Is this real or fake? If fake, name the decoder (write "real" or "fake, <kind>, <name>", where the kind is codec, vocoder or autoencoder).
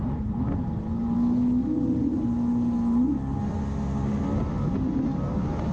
real